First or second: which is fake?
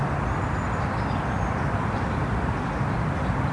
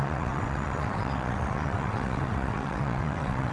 second